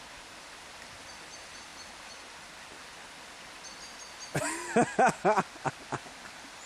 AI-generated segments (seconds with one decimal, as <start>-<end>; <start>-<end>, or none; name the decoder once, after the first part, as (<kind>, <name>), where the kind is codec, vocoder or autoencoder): none